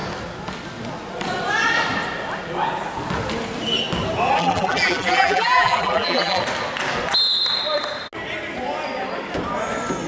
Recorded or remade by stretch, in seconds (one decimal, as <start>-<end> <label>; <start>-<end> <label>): 0.0-4.4 recorded; 4.4-6.4 remade; 6.4-10.1 recorded